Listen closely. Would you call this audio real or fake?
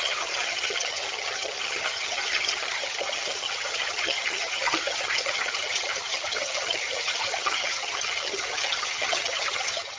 fake